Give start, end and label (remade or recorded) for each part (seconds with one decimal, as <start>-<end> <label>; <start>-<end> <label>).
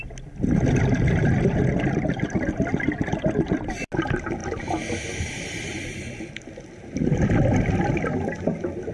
0.0-8.9 recorded